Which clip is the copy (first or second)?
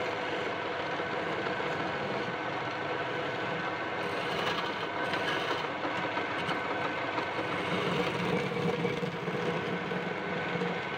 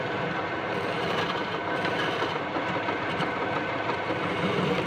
second